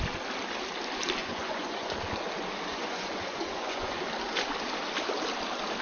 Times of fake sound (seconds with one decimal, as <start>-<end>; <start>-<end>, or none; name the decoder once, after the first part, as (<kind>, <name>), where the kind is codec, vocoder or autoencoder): 1.2-1.9 (vocoder, Vocos); 2.7-4.0